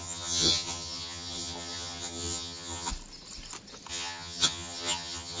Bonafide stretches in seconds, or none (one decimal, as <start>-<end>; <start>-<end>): 2.9-3.9